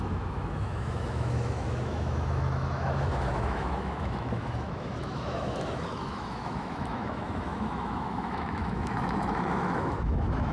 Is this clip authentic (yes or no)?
no